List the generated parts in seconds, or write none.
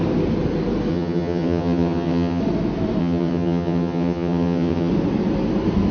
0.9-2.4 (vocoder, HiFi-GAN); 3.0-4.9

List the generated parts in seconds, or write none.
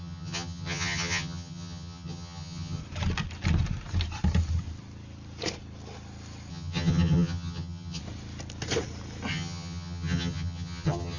0.0-2.8 (vocoder, HiFi-GAN); 6.5-8.0; 9.3-11.2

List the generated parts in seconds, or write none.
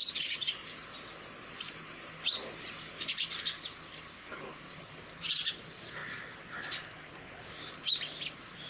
0.0-0.5 (vocoder, HiFi-GAN)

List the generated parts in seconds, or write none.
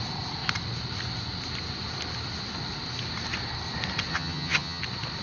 4.1-4.8 (vocoder, HiFi-GAN)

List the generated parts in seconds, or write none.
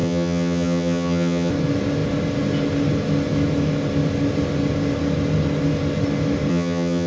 0.0-1.5 (vocoder, HiFi-GAN); 6.5-7.1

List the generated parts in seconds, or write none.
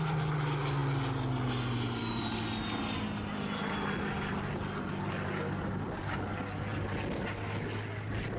none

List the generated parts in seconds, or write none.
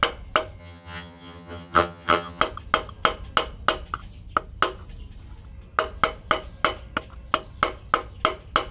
0.6-2.4 (vocoder, HiFi-GAN)